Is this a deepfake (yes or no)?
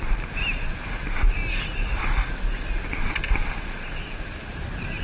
no